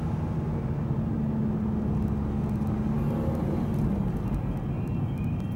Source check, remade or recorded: recorded